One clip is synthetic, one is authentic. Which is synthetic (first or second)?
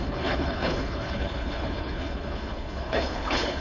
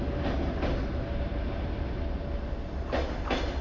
first